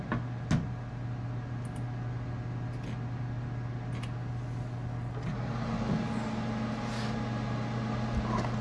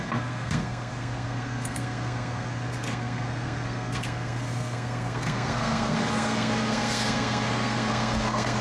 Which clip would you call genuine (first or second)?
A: first